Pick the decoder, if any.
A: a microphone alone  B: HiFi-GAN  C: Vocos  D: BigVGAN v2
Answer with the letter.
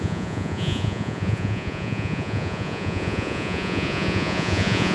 C